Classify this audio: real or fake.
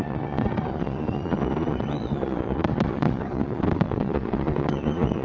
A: fake